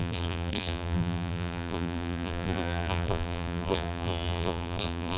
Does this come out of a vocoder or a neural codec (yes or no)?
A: yes